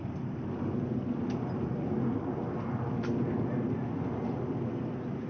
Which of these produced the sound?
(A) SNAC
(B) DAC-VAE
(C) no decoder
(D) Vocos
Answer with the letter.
C